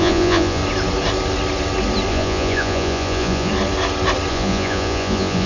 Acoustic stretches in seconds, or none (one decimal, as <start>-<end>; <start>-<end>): 0.6-2.1; 3.5-4.3